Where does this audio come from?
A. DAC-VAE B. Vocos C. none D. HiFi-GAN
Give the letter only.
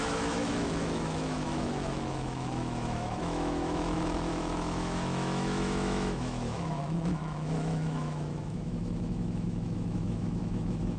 A